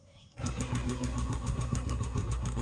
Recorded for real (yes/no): no